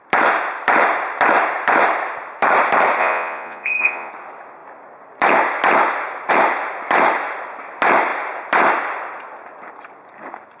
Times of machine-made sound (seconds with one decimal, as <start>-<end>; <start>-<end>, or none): 3.0-4.1